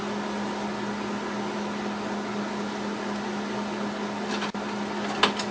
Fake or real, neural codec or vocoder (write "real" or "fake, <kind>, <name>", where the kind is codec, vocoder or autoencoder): real